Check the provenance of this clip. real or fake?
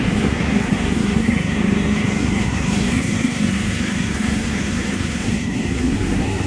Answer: fake